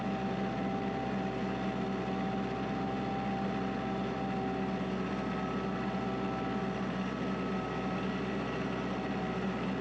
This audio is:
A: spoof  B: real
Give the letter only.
B